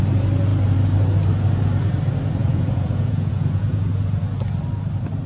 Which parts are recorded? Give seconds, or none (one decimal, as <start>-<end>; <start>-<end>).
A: 0.0-2.4; 3.9-5.3